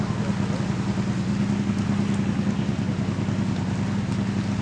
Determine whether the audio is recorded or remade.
recorded